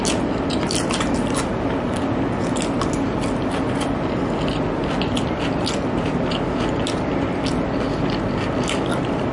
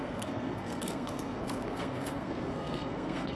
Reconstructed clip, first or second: second